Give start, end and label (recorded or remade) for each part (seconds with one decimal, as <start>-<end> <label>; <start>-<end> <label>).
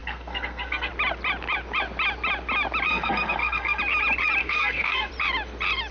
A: 0.0-0.9 remade; 0.9-2.9 recorded; 2.9-3.8 remade; 3.8-4.4 recorded; 4.4-5.1 remade; 5.1-5.9 recorded